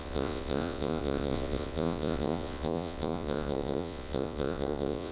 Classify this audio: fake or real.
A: fake